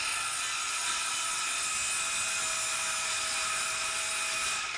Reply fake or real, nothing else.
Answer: real